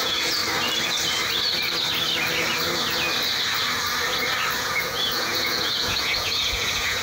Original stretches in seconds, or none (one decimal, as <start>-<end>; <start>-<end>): 0.4-4.6